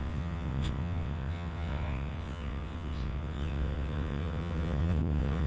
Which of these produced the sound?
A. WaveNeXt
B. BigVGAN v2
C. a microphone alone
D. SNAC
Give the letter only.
A